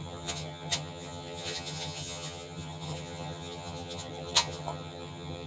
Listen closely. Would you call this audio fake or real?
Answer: fake